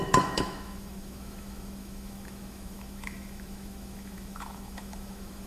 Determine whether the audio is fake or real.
fake